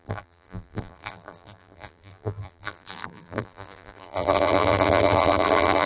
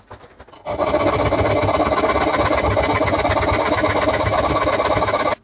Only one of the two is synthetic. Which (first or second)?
first